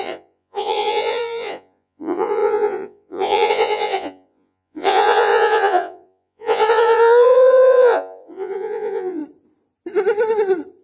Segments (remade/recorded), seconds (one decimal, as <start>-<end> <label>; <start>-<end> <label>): 0.0-9.2 remade; 9.2-10.8 recorded